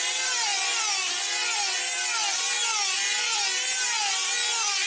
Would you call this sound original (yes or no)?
yes